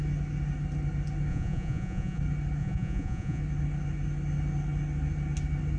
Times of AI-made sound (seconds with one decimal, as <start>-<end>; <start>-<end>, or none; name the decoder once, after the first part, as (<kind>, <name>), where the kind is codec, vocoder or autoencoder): 1.3-2.2 (vocoder, Vocos); 2.6-3.4